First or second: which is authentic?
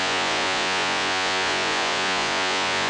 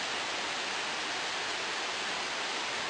second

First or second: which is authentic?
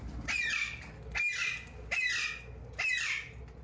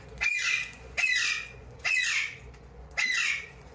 first